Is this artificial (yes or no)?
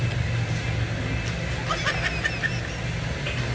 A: no